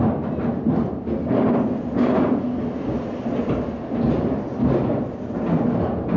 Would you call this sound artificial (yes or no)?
no